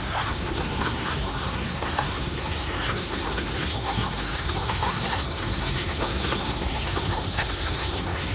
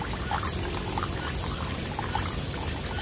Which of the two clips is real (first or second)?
second